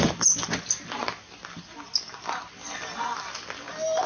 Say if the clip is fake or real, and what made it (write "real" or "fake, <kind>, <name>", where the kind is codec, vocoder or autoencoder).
real